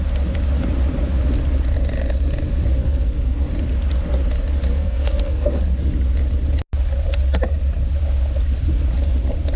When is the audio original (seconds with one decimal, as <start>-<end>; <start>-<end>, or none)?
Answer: 0.0-2.8; 3.5-4.7; 5.6-9.6